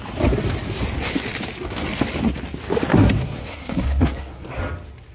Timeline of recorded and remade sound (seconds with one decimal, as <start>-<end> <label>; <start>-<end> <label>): 0.0-2.9 recorded; 2.9-4.5 remade; 4.5-5.1 recorded